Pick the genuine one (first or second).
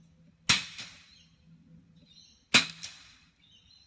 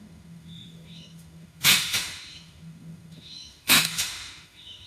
first